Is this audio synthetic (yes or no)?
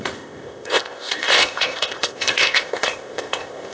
yes